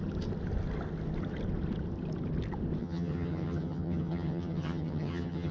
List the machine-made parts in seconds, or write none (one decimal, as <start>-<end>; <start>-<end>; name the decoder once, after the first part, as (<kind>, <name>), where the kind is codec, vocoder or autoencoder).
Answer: 2.8-5.5 (vocoder, HiFi-GAN)